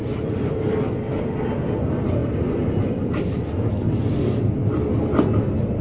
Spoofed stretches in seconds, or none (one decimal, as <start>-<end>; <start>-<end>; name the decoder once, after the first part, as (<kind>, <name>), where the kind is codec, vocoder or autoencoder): 0.0-0.5 (vocoder, BigVGAN v2); 2.2-3.7